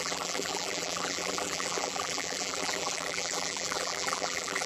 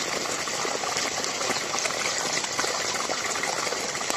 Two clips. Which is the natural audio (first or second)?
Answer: second